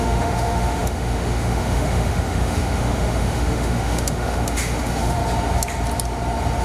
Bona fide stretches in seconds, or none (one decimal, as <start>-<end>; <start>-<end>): 5.2-6.6